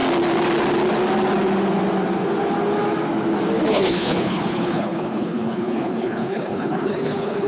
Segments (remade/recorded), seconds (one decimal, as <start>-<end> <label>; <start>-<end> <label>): 0.0-3.7 recorded; 3.7-7.5 remade